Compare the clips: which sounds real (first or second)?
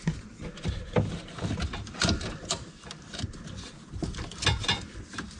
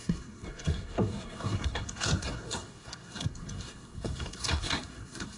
first